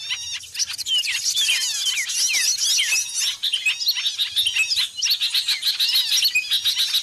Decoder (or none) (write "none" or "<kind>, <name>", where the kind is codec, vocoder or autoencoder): none